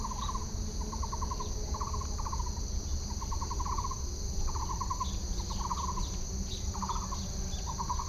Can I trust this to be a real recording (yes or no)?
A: yes